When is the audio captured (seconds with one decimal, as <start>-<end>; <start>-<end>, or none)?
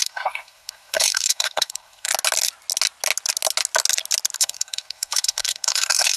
2.1-4.4